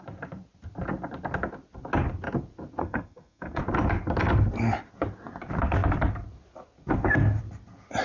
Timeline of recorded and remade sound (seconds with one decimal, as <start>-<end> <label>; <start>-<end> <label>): 0.0-2.8 recorded; 2.8-3.6 remade; 3.6-8.0 recorded